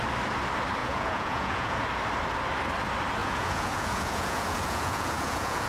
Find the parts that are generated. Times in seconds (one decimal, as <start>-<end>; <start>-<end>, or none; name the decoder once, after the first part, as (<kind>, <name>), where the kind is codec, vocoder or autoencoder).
0.8-1.8 (vocoder, Vocos); 3.2-5.7